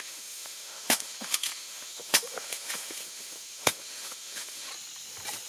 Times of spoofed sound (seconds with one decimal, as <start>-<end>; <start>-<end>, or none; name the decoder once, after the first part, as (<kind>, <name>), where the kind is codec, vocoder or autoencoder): 0.0-4.7 (autoencoder, DAC-VAE)